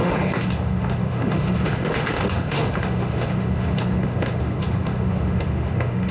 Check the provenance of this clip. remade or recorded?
remade